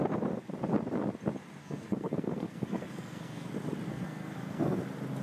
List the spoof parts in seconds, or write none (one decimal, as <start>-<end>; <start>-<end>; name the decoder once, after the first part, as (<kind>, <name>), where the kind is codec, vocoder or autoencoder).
1.6-3.5 (codec, SNAC); 3.9-4.8